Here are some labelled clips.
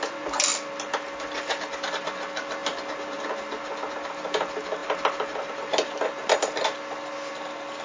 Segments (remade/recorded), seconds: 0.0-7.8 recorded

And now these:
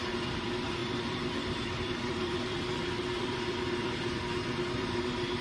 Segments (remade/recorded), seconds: 0.0-5.4 remade

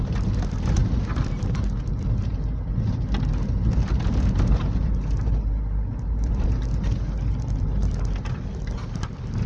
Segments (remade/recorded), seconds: 0.0-5.9 recorded; 5.9-6.6 remade; 6.6-9.5 recorded